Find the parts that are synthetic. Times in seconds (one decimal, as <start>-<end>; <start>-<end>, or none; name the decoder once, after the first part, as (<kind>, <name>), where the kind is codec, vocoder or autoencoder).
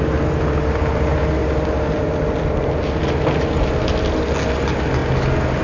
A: none